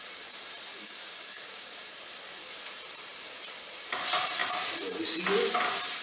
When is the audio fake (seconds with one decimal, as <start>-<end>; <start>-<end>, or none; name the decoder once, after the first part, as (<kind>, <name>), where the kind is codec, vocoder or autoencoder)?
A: 0.8-1.8 (codec, DAC)